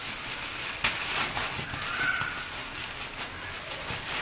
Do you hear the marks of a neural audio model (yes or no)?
no